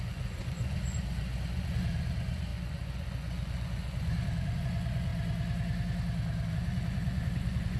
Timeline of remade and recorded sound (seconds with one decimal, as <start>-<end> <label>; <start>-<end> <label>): 0.0-5.1 remade; 5.1-6.5 recorded; 6.5-7.8 remade